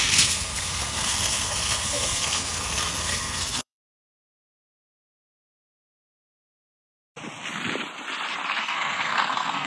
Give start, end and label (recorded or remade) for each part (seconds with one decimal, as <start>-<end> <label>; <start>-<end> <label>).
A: 0.0-5.6 remade; 5.6-8.6 recorded; 8.6-9.7 remade